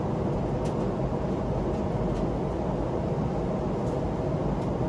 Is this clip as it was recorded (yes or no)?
yes